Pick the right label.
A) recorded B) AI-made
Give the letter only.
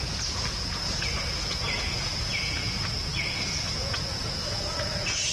B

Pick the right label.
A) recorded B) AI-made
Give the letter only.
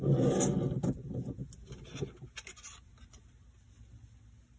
A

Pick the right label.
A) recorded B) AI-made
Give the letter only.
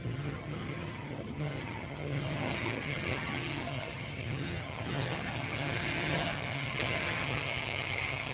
B